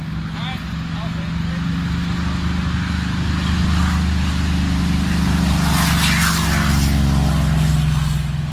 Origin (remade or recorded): recorded